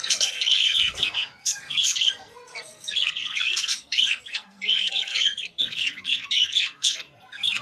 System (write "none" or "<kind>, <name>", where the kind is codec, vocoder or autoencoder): codec, SNAC